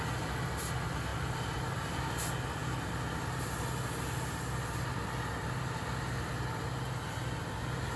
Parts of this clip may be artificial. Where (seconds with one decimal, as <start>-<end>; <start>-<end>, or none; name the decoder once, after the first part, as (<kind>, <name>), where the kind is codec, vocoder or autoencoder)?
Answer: 1.1-2.1 (vocoder, BigVGAN v2)